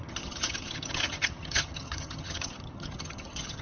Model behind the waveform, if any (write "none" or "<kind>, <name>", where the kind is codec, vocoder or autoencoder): vocoder, HiFi-GAN